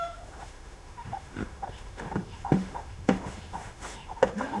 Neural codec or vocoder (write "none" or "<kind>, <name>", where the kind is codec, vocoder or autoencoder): autoencoder, DAC-VAE